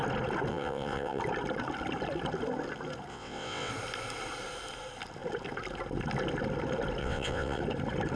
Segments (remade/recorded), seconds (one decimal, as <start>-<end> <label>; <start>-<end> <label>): 0.0-0.5 recorded; 0.5-1.2 remade; 1.2-3.1 recorded; 3.1-3.7 remade; 3.7-7.0 recorded; 7.0-7.6 remade; 7.6-8.2 recorded